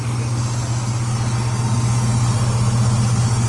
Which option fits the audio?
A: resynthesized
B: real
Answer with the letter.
B